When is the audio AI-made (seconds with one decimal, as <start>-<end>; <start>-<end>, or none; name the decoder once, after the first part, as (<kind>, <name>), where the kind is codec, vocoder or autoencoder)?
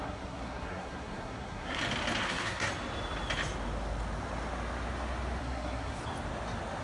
0.0-1.8 (codec, SNAC); 2.2-2.7; 5.4-6.0